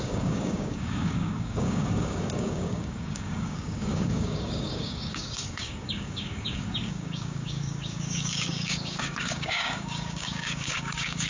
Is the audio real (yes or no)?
no